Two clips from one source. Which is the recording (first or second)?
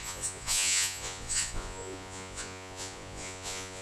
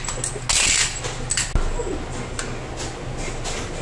second